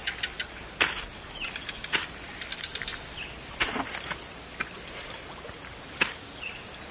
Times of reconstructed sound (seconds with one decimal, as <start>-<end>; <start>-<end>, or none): none